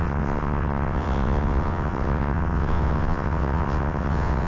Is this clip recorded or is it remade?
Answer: remade